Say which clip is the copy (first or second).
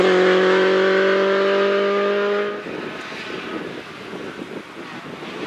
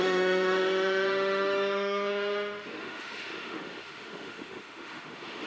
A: second